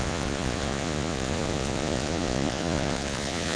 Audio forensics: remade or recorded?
remade